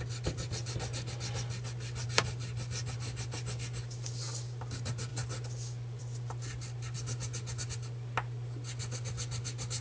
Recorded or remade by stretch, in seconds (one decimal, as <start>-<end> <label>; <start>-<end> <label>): 0.0-9.8 recorded